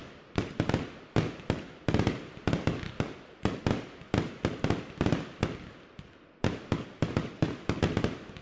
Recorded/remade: recorded